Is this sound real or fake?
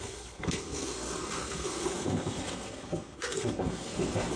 fake